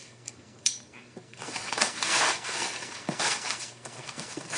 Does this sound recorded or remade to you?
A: remade